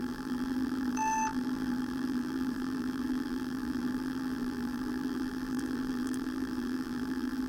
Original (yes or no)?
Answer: no